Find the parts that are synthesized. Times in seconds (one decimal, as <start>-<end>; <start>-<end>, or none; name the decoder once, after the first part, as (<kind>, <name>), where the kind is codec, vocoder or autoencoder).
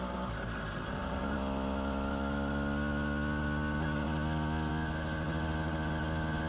none